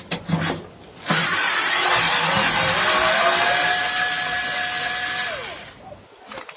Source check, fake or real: real